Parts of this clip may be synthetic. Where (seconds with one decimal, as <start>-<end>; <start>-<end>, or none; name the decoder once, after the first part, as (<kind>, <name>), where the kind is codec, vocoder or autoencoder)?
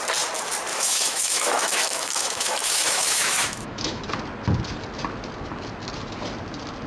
0.7-4.0 (autoencoder, DAC-VAE)